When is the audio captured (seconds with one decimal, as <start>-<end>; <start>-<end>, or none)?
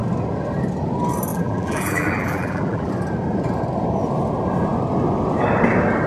0.0-1.3; 2.9-6.1